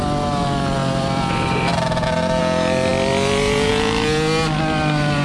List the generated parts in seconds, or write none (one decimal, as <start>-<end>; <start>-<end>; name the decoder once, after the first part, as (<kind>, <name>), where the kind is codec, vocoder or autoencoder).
none